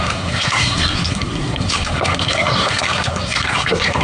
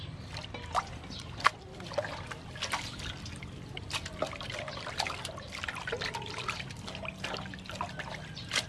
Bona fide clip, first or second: second